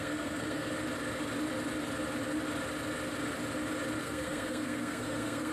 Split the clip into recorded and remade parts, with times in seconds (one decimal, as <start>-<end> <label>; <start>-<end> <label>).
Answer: 0.0-0.7 remade; 0.7-4.0 recorded; 4.0-5.5 remade